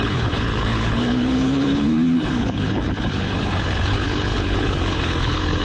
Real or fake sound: fake